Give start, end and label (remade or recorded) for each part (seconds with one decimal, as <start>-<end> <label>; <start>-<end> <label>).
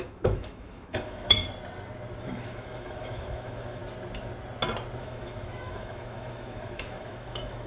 0.0-1.4 remade; 1.4-2.2 recorded; 2.2-3.8 remade; 3.8-5.0 recorded; 5.0-7.7 remade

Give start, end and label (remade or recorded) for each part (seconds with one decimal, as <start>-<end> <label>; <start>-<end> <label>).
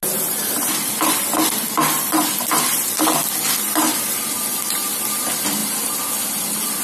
0.0-6.8 recorded